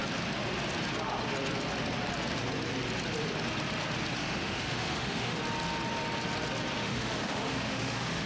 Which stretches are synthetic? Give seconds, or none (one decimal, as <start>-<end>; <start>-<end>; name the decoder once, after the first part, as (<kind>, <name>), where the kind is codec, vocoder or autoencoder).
4.2-5.4 (autoencoder, DAC-VAE); 6.8-8.3